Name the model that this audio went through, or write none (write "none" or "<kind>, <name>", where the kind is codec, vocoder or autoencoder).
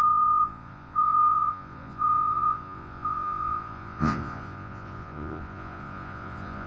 vocoder, Vocos